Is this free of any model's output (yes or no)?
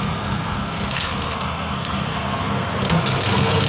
no